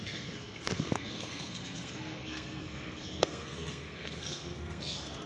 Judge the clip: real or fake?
fake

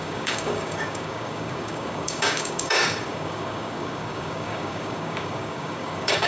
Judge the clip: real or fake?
fake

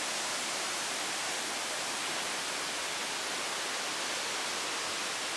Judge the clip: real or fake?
real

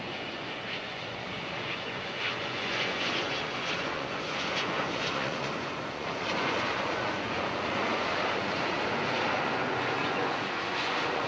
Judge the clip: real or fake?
fake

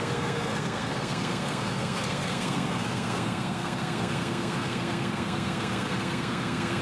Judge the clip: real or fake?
fake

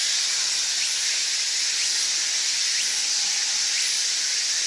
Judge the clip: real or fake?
real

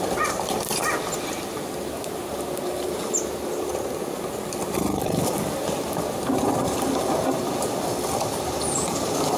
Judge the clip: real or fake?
real